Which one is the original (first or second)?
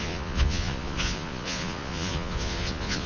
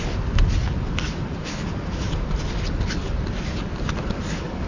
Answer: second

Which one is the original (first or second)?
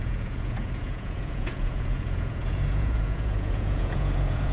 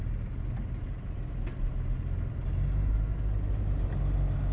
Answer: second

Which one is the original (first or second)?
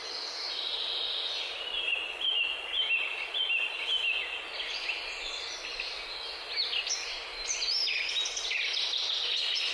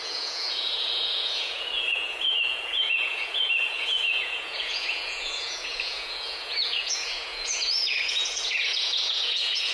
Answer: first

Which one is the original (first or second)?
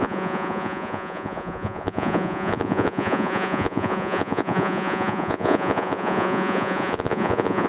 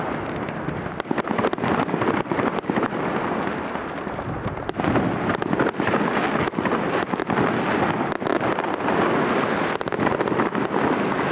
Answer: second